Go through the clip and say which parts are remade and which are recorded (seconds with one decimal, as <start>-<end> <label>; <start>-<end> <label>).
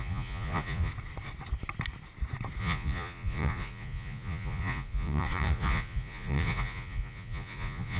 0.0-0.9 remade; 0.9-2.6 recorded; 2.6-8.0 remade